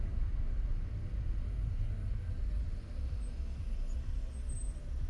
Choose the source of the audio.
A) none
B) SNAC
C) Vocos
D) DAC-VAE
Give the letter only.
A